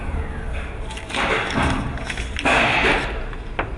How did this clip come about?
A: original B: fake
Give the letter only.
A